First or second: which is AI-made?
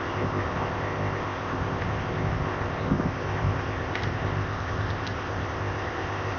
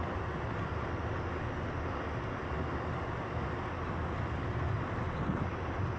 first